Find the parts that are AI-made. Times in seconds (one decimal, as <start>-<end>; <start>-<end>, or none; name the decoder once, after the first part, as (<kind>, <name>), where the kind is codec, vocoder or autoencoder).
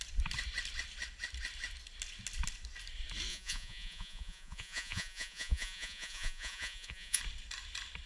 3.3-7.2 (vocoder, Vocos)